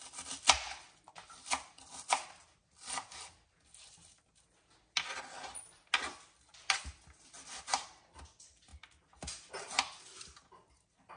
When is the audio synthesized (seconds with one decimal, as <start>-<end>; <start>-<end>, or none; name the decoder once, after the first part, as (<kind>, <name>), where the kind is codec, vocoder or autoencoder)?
none